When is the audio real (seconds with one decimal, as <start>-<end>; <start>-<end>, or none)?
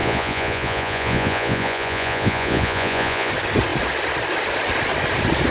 3.3-5.5